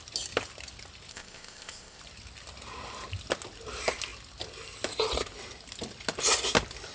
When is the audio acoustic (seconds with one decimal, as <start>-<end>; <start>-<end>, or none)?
0.0-1.1; 2.0-6.9